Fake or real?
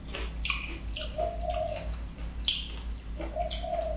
real